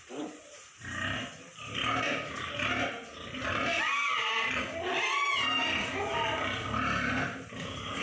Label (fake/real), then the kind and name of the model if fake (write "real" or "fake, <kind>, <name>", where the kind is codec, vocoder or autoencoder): real